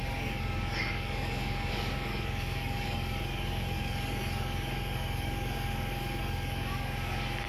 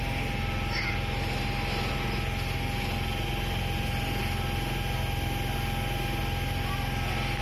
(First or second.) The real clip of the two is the second